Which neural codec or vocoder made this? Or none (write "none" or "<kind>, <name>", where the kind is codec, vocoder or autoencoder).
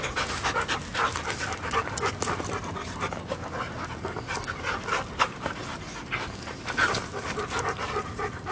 none